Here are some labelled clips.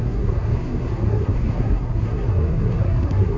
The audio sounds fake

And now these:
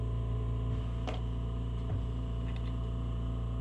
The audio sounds real